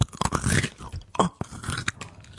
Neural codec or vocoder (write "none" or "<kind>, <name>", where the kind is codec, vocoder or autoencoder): none